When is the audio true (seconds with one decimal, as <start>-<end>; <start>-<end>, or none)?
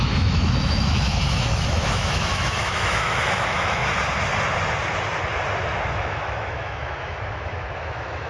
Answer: 3.8-5.9